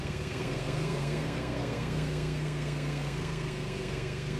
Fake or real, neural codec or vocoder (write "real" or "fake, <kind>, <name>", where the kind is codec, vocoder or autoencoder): fake, codec, SNAC